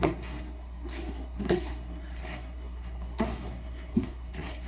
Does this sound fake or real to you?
fake